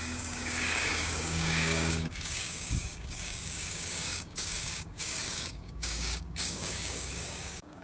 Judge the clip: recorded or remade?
remade